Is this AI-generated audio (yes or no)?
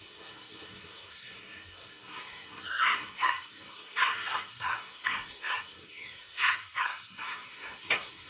yes